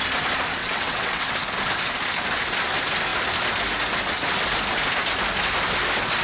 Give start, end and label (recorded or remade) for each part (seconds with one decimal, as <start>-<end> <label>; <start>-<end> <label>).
0.0-0.6 recorded; 0.6-1.3 remade; 1.3-6.2 recorded